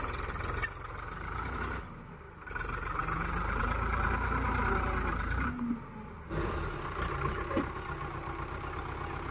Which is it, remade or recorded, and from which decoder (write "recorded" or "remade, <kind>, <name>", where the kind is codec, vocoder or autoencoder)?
recorded